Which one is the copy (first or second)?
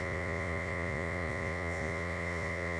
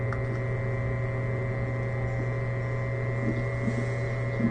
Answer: first